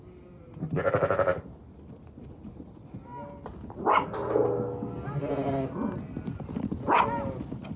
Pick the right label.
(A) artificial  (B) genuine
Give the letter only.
B